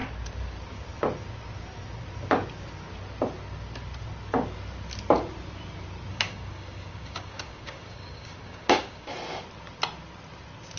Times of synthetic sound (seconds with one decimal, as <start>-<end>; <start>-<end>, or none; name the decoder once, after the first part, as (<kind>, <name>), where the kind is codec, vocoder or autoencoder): 6.1-9.1 (codec, DAC)